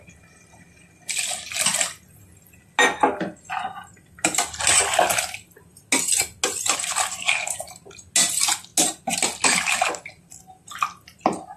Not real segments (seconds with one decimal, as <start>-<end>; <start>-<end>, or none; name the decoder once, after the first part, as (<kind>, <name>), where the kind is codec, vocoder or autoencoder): none